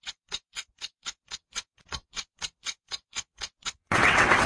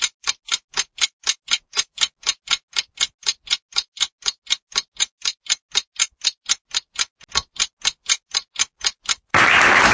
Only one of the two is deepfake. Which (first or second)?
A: first